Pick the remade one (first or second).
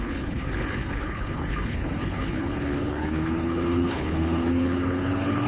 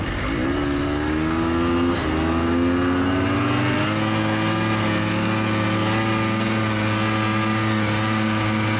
first